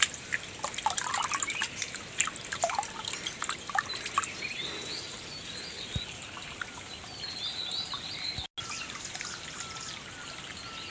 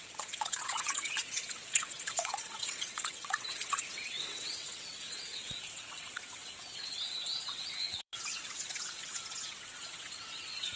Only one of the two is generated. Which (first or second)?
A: second